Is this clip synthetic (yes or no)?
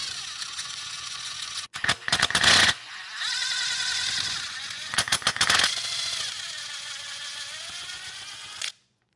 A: yes